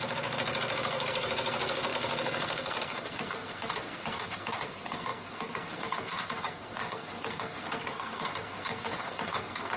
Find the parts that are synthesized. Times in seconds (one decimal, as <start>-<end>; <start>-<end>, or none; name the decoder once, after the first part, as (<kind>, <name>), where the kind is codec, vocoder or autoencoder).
0.0-9.8 (codec, SNAC)